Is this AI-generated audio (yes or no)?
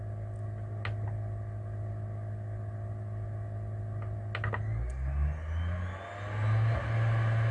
no